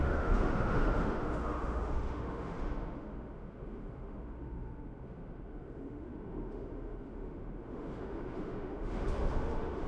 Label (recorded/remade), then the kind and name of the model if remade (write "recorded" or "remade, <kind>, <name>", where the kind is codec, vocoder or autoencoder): remade, autoencoder, DAC-VAE